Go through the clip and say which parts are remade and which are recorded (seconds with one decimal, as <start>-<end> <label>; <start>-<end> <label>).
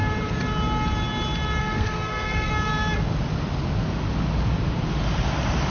0.0-1.6 recorded; 1.6-2.5 remade; 2.5-5.7 recorded